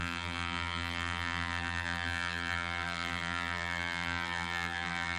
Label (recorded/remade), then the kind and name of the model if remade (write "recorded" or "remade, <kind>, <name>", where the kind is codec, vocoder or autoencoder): remade, vocoder, BigVGAN v2